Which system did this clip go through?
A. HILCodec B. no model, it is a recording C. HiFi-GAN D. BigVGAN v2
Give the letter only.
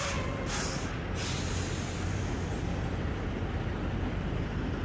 B